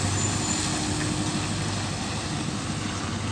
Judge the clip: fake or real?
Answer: real